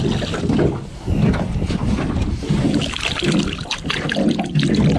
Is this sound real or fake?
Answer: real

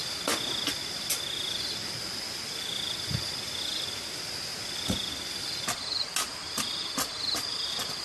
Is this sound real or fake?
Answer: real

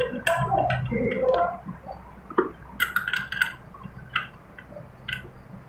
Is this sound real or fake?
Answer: real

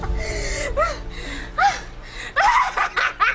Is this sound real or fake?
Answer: real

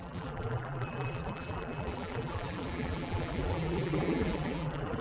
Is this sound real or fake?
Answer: fake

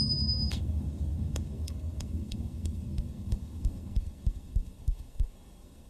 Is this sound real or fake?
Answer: fake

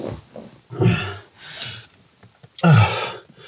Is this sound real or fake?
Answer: real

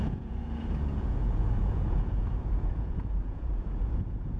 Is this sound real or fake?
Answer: fake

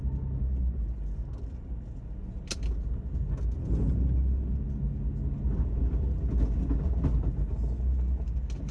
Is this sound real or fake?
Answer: real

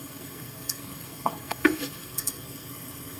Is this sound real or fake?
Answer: fake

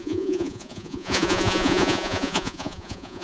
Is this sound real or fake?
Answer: fake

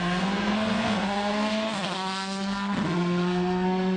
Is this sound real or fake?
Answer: fake